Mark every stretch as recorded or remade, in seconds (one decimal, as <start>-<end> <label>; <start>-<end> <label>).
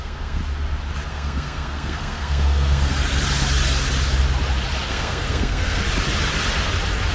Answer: 0.0-0.4 remade; 0.4-1.1 recorded; 1.1-2.9 remade; 2.9-4.9 recorded; 4.9-5.8 remade; 5.8-7.1 recorded